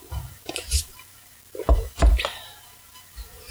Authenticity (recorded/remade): remade